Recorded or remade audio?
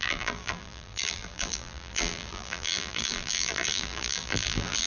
remade